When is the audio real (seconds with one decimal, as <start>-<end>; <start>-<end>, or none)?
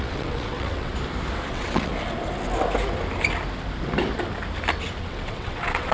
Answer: 0.9-1.5; 1.9-5.0